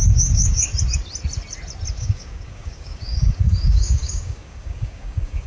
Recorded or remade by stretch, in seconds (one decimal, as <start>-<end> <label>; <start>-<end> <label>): 0.0-0.7 remade; 0.7-1.9 recorded; 1.9-5.5 remade